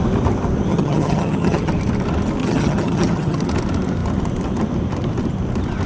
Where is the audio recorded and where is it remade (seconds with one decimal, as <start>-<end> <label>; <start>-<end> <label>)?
0.0-0.7 recorded; 0.7-1.7 remade; 1.7-2.4 recorded; 2.4-3.5 remade; 3.5-5.9 recorded